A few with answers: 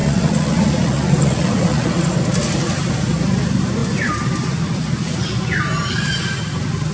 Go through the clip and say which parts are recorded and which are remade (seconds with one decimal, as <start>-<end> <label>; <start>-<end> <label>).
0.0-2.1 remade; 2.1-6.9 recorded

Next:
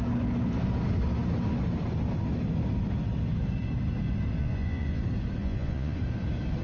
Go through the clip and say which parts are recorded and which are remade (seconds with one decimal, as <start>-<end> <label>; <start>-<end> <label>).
0.0-4.4 recorded; 4.4-5.0 remade; 5.0-5.4 recorded; 5.4-6.0 remade; 6.0-6.6 recorded

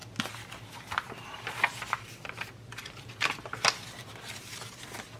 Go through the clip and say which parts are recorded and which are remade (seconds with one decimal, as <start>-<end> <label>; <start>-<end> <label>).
0.0-5.2 recorded

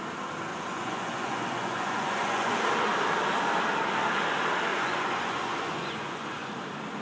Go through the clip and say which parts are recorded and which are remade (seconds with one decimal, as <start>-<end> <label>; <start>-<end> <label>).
0.0-0.5 recorded; 0.5-2.6 remade; 2.6-4.7 recorded; 4.7-6.5 remade; 6.5-7.0 recorded

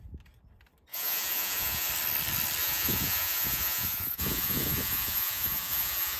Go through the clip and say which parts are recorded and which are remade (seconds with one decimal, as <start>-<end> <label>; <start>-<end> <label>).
0.0-0.9 recorded; 0.9-1.9 remade; 1.9-2.6 recorded; 2.6-6.2 remade

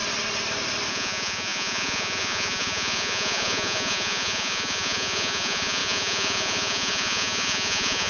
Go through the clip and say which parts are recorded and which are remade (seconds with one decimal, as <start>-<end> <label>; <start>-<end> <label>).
0.0-0.9 recorded; 0.9-8.1 remade